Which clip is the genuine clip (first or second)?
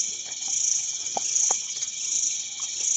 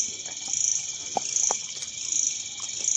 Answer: second